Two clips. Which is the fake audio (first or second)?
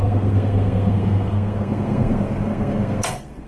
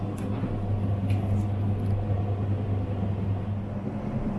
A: first